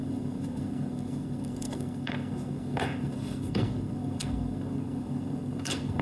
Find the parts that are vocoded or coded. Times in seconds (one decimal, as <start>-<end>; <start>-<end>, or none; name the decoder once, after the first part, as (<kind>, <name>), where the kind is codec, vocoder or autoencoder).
0.0-6.0 (codec, SNAC)